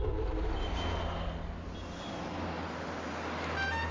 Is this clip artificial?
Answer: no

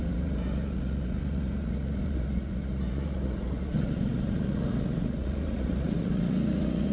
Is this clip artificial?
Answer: yes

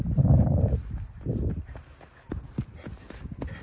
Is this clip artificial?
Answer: no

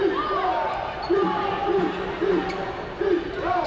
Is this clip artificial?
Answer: no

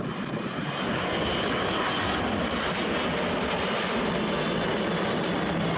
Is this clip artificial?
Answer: no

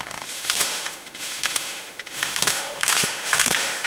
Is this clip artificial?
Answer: yes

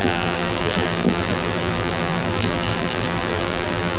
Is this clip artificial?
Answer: yes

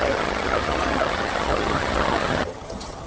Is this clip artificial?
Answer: yes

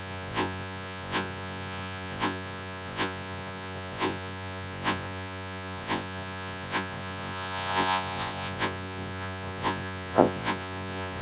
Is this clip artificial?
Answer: yes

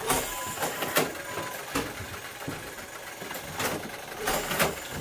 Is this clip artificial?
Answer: no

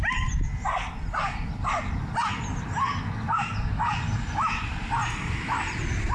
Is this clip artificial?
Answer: no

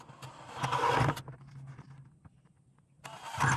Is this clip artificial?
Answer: no